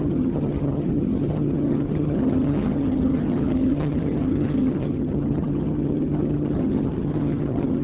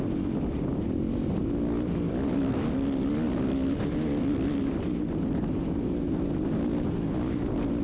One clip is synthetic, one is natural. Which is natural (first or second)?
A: second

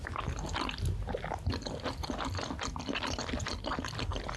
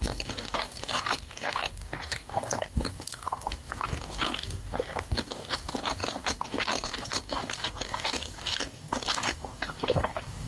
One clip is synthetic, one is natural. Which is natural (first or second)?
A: first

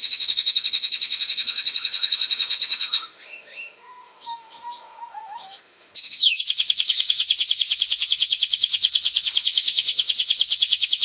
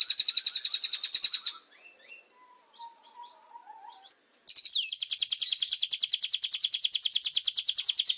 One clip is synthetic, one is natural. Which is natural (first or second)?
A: second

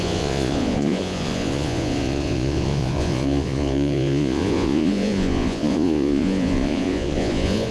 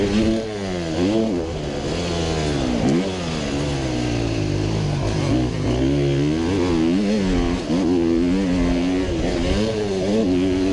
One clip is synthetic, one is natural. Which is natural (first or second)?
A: second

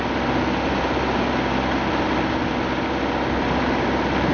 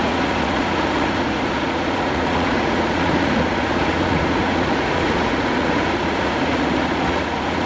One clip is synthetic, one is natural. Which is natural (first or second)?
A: first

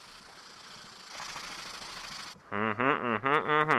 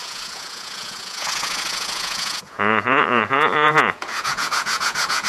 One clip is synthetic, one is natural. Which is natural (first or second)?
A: first